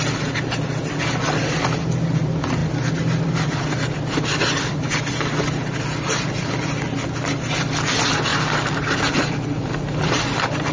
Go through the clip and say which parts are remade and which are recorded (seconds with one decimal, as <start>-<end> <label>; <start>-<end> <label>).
0.0-10.7 recorded